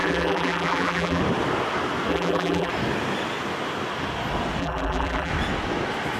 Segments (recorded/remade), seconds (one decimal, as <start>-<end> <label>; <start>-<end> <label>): 0.0-1.2 remade; 1.2-2.1 recorded; 2.1-2.7 remade; 2.7-4.6 recorded; 4.6-5.3 remade; 5.3-6.2 recorded

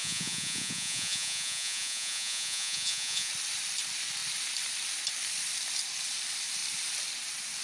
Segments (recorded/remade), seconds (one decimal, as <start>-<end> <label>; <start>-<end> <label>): 0.0-3.3 remade; 3.3-7.6 recorded